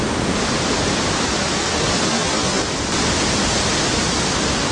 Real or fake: real